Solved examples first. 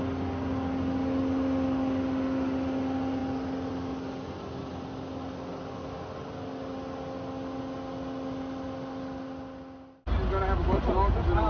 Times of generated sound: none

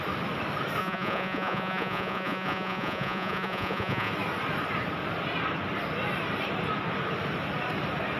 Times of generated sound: 0.8-4.1 (vocoder, Vocos)

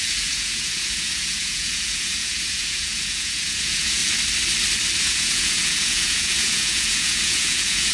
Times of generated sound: 0.0-4.0 (vocoder, Vocos); 5.0-7.9

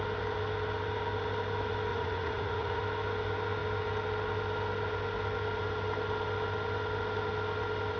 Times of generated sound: 1.9-2.8 (vocoder, Vocos)

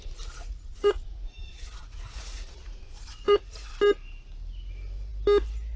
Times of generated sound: 0.4-3.7 (vocoder, Vocos)